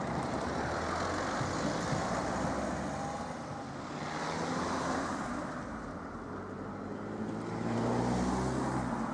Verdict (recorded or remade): recorded